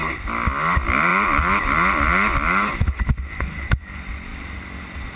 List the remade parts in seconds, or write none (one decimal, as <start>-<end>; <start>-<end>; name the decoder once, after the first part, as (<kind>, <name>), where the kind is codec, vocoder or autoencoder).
none